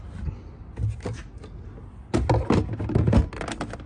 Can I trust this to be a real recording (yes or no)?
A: yes